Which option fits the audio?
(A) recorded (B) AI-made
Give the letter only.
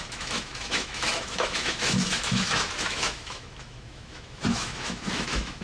B